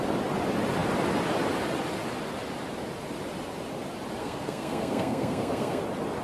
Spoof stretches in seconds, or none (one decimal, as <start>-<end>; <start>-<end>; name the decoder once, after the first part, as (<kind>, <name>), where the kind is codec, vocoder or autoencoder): 4.2-5.8 (codec, SNAC)